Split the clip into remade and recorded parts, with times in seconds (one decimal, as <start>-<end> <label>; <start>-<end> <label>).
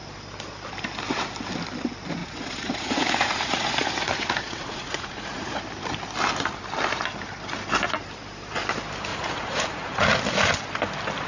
0.0-2.2 recorded; 2.2-5.6 remade; 5.6-9.1 recorded; 9.1-10.2 remade; 10.2-11.3 recorded